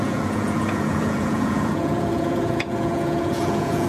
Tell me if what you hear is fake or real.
fake